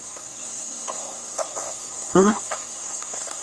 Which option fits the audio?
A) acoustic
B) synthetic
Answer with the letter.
B